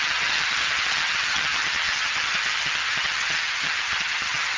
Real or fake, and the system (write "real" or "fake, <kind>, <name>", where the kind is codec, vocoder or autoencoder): fake, vocoder, HiFi-GAN